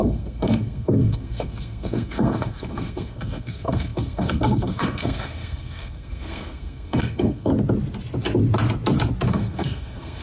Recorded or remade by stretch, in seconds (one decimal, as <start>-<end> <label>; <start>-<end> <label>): 0.0-7.5 remade; 7.5-9.3 recorded; 9.3-10.2 remade